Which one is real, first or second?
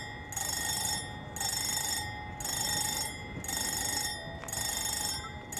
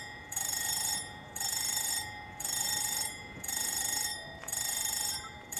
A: first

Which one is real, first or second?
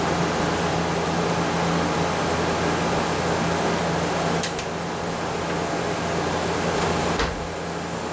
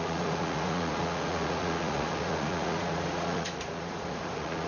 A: first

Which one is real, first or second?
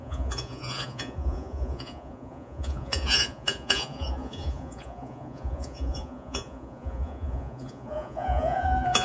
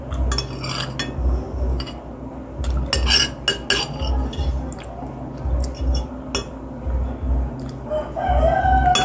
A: second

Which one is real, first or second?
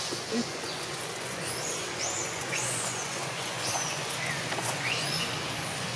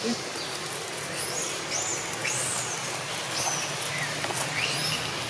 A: second